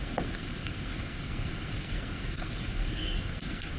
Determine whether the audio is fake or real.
fake